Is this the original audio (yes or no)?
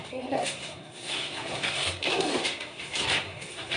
no